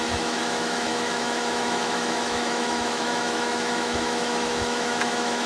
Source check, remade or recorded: remade